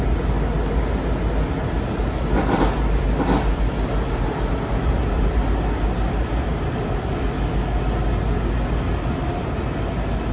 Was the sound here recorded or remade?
recorded